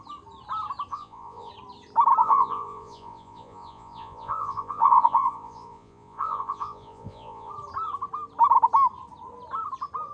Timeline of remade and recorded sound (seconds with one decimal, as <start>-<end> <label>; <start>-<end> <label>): 0.0-0.9 recorded; 0.9-1.5 remade; 1.5-2.2 recorded; 2.2-7.5 remade; 7.5-10.1 recorded